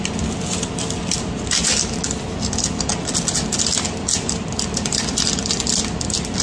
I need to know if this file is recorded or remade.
recorded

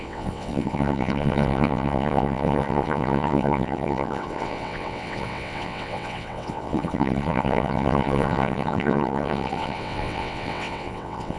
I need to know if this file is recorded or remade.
remade